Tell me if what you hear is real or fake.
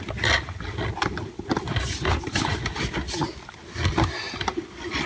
real